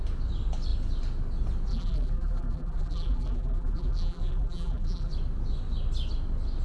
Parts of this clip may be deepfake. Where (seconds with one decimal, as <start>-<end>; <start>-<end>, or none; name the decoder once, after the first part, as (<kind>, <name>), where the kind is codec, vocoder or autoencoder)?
1.7-5.1 (vocoder, BigVGAN v2)